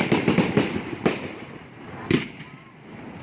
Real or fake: real